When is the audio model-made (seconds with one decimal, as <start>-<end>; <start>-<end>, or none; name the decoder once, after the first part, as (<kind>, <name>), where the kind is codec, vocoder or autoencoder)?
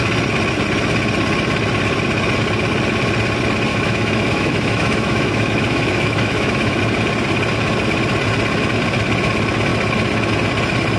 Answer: 3.7-6.8 (autoencoder, DAC-VAE)